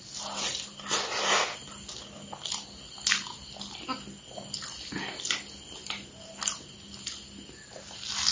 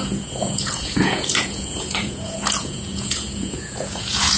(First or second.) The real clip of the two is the first